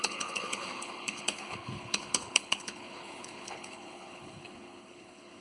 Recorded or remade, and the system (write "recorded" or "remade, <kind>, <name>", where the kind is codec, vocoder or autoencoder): remade, codec, HILCodec